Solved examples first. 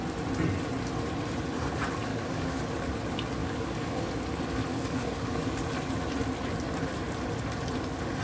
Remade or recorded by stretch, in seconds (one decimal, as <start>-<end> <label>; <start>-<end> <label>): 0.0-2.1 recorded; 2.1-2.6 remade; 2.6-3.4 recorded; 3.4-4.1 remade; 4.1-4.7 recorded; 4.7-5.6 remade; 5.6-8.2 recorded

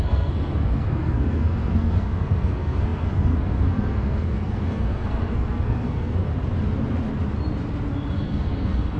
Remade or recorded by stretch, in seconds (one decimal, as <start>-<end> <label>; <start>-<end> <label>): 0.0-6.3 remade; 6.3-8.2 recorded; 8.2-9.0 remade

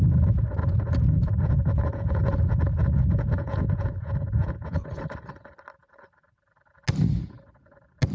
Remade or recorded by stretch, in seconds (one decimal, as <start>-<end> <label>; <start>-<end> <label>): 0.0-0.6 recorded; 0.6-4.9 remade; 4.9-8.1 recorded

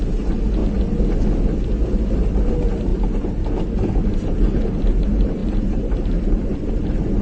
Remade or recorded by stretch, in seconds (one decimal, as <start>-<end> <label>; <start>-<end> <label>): 0.0-0.6 remade; 0.6-2.5 recorded; 2.5-2.9 remade; 2.9-3.9 recorded; 3.9-7.2 remade

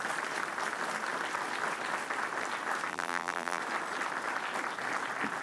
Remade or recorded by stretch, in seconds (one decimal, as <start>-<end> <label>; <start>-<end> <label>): 0.0-2.9 recorded; 2.9-3.6 remade; 3.6-5.4 recorded

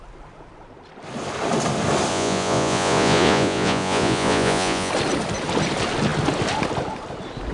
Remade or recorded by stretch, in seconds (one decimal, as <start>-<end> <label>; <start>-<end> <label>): 0.0-2.1 recorded; 2.1-4.9 remade; 4.9-7.5 recorded

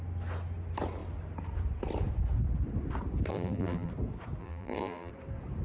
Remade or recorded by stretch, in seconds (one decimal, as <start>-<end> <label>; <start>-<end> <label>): 0.0-3.3 recorded; 3.3-3.9 remade; 3.9-4.4 recorded; 4.4-5.1 remade; 5.1-5.6 recorded

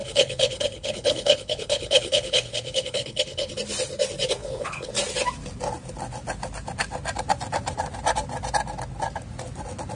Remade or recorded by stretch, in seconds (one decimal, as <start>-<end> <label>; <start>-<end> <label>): 0.0-3.5 remade; 3.5-4.4 recorded; 4.4-4.9 remade; 4.9-10.0 recorded